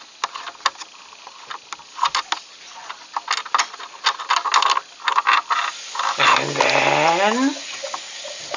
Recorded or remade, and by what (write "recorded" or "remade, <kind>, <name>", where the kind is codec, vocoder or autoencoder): recorded